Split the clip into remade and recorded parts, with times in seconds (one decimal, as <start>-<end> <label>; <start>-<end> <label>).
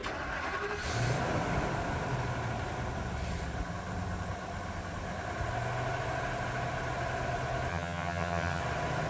0.0-7.7 recorded; 7.7-8.6 remade; 8.6-9.1 recorded